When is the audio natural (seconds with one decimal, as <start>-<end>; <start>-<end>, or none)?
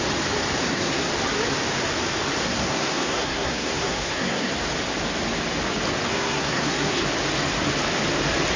0.0-0.6; 1.1-2.4; 4.5-6.1; 7.0-8.6